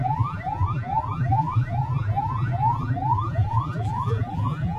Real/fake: fake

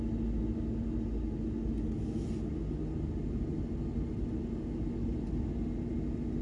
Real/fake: real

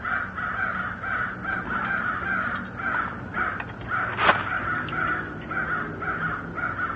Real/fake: real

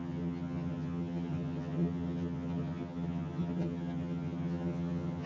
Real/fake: fake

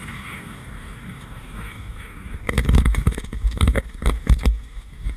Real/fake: fake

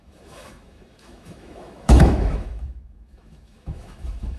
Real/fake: fake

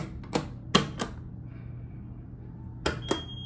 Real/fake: real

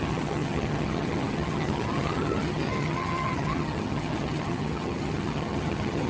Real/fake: fake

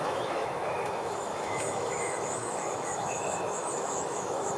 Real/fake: fake